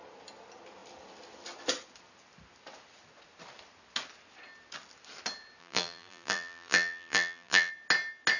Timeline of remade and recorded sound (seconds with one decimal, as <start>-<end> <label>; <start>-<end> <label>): 0.0-5.6 recorded; 5.6-7.7 remade; 7.7-8.4 recorded